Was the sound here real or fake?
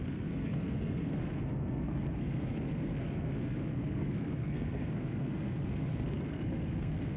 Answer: fake